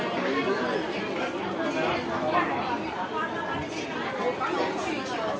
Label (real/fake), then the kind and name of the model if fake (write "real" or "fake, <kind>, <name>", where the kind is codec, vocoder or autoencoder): real